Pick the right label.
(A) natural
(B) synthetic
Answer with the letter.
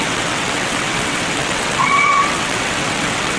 B